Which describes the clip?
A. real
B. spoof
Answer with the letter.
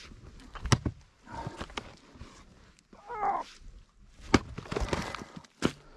A